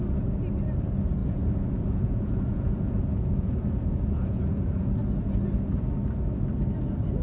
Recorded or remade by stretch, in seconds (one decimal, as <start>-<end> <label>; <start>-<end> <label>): 0.0-1.2 recorded; 1.2-5.0 remade; 5.0-7.2 recorded